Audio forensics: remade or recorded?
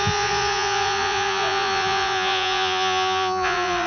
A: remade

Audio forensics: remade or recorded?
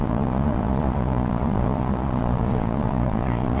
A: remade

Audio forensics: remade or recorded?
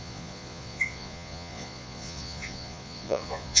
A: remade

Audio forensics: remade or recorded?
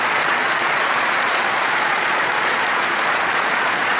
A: remade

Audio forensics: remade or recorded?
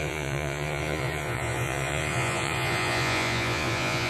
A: remade